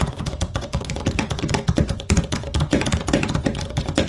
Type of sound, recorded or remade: remade